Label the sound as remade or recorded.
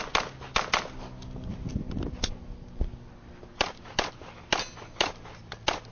recorded